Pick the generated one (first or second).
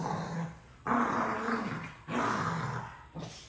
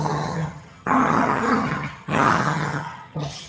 second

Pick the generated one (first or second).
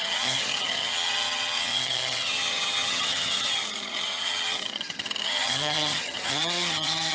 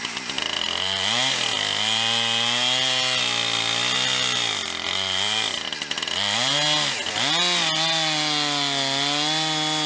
first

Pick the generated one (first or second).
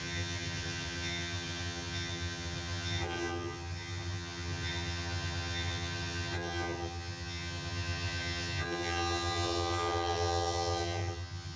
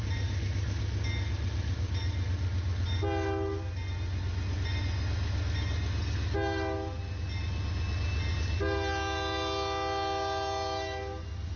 first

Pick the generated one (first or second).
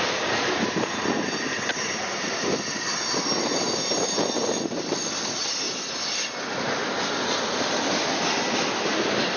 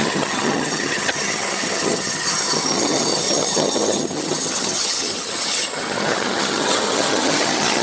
second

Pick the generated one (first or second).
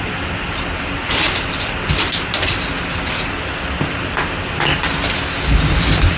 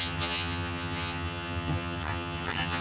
second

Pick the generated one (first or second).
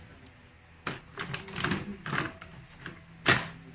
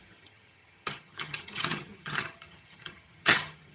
second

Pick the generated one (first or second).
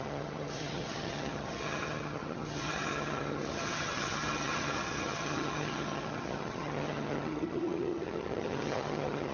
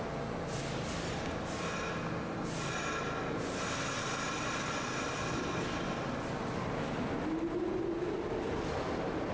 first